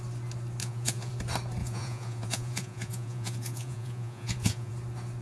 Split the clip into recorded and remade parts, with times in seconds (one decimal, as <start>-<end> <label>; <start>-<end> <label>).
0.0-0.6 recorded; 0.6-1.1 remade; 1.1-1.6 recorded; 1.6-4.7 remade; 4.7-5.2 recorded